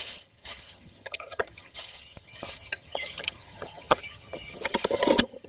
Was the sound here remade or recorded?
remade